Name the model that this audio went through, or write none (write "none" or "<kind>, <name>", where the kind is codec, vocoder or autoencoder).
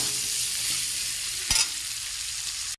none